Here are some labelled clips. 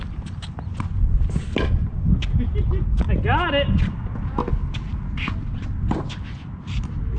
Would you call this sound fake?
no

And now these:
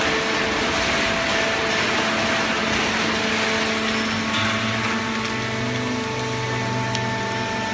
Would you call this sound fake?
no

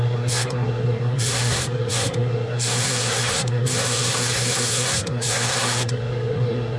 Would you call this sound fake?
yes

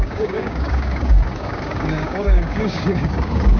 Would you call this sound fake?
yes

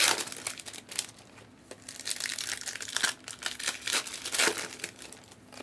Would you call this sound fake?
no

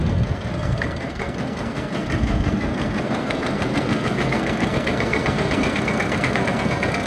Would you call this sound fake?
yes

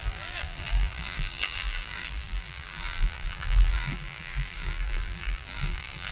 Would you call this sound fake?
yes